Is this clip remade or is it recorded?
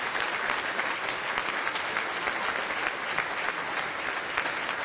recorded